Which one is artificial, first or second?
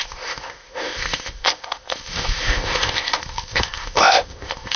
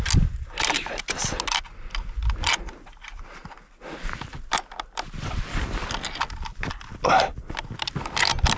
first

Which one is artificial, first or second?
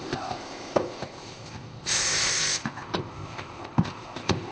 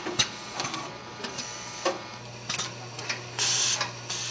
first